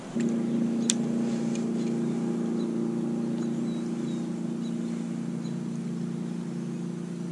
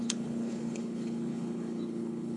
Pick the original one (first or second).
first